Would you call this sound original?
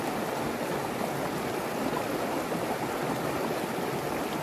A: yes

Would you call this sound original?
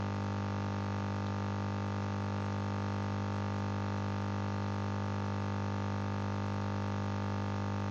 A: yes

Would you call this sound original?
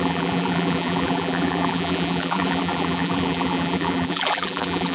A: no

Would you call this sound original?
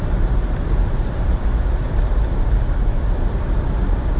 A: no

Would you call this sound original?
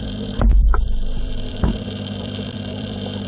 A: no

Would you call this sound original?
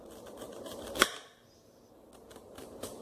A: yes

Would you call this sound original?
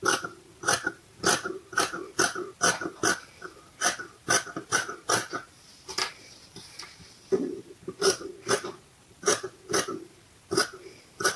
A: no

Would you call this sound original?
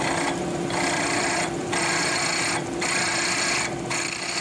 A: no